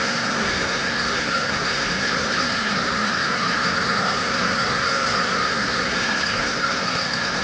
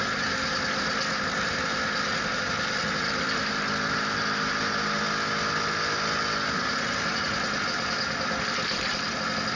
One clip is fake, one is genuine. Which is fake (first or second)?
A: first